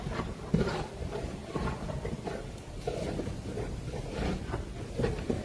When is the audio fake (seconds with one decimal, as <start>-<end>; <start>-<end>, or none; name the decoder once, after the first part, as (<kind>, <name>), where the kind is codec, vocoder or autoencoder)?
none